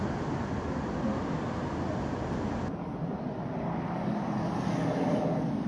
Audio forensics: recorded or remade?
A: recorded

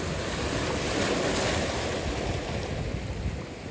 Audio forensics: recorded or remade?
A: recorded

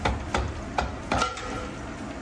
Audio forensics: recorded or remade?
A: recorded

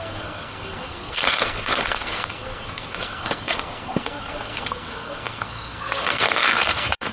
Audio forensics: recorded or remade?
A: remade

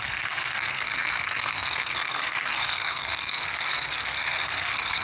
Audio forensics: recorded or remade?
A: remade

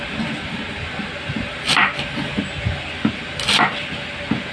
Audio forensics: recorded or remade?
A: recorded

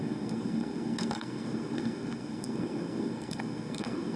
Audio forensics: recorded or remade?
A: remade